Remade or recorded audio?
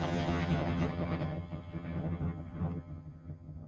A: remade